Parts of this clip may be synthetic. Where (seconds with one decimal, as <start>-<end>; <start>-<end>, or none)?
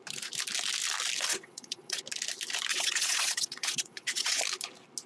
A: 1.3-2.0; 2.7-4.4